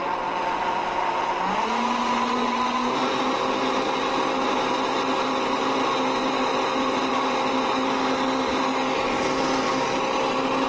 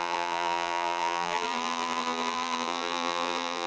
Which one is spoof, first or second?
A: second